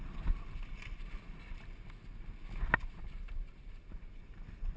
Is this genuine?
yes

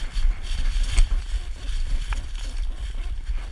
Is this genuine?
no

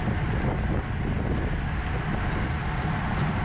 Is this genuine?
yes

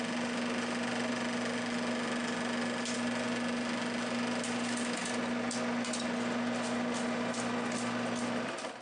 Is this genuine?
yes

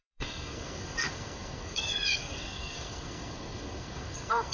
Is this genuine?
no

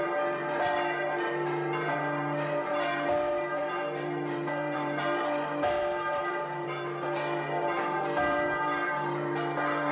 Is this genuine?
no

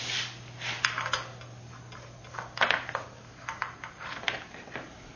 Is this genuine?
yes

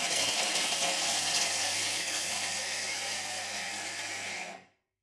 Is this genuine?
no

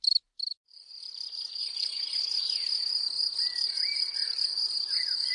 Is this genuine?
no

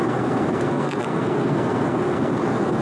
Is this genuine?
no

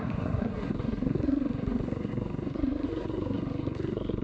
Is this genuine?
no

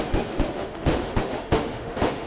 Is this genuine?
no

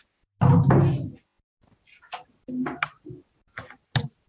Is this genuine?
yes